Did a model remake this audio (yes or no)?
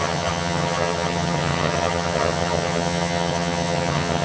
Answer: yes